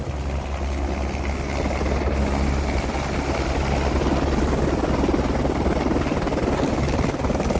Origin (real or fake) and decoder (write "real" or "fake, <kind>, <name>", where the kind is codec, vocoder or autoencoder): real